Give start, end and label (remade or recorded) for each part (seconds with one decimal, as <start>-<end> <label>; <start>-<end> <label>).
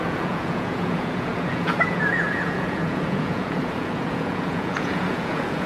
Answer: 0.0-5.7 remade